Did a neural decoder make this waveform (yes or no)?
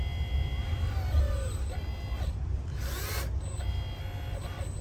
no